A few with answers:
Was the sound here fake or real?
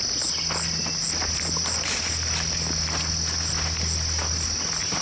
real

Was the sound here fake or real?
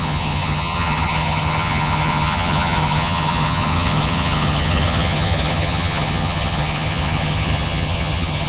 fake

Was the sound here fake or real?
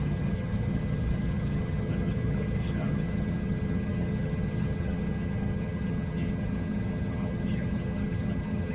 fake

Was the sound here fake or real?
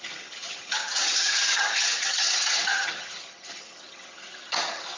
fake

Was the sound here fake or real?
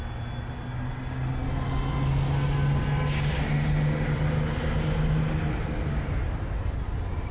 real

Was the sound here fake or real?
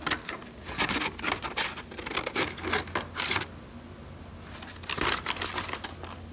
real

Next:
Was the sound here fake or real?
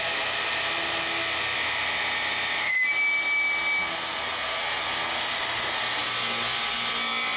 real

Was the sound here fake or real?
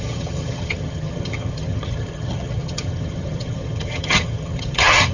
fake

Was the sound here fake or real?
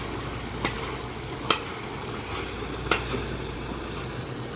real